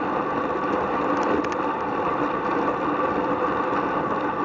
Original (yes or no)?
yes